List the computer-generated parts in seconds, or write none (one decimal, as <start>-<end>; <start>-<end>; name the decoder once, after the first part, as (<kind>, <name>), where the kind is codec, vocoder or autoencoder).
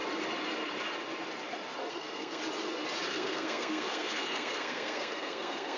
1.9-2.4 (codec, SNAC); 3.1-5.8